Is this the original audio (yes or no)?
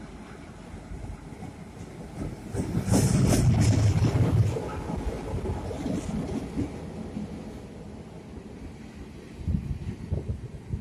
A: yes